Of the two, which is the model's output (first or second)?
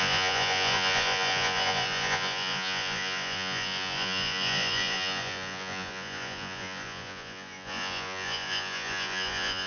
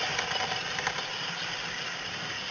first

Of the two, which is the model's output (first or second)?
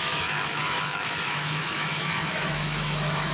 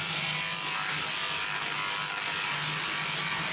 first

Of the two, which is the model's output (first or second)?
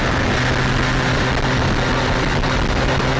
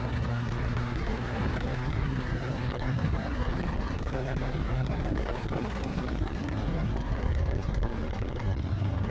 second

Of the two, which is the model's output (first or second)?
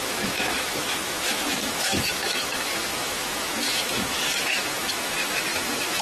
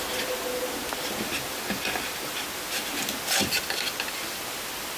first